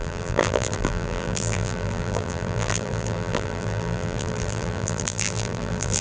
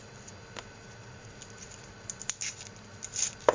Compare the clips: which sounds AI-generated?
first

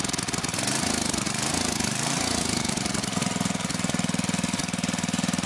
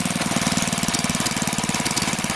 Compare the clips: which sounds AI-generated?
first